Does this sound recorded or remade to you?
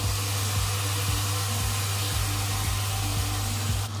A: recorded